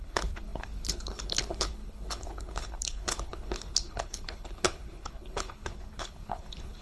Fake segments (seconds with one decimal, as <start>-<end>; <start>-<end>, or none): 0.0-6.8